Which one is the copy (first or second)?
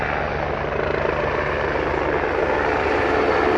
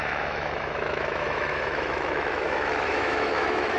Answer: second